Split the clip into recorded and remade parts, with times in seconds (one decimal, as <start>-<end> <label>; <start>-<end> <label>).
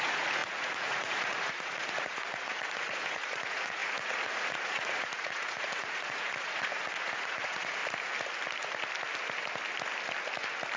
0.0-7.8 remade; 7.8-10.8 recorded